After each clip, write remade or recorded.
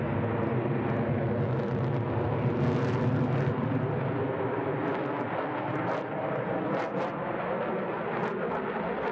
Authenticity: recorded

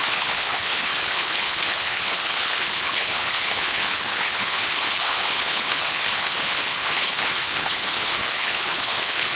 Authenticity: remade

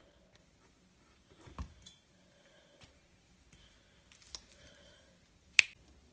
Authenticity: recorded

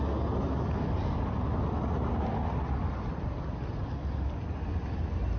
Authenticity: recorded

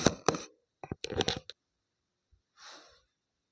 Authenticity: recorded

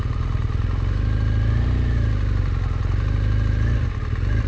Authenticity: recorded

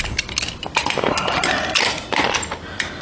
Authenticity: recorded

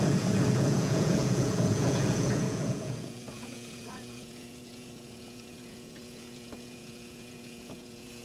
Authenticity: remade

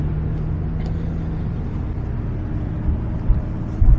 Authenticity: recorded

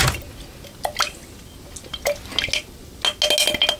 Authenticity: recorded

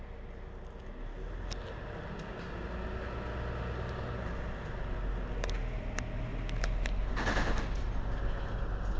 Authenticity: recorded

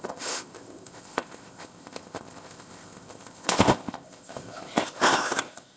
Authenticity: remade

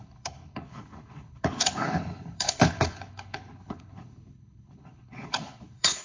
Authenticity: remade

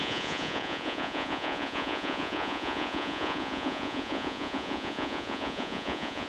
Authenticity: remade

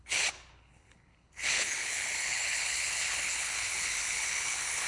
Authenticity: remade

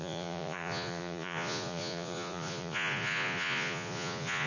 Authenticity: remade